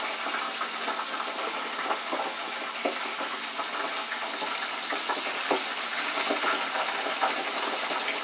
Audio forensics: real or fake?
real